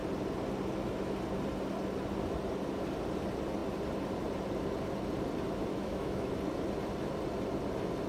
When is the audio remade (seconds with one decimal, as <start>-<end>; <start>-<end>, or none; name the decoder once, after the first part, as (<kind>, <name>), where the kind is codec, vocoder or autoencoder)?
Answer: 5.7-6.3 (autoencoder, DAC-VAE)